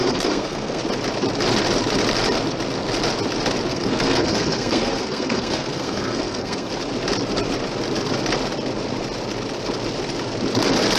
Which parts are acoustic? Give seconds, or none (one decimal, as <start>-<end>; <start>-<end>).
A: 0.8-3.7; 6.7-11.0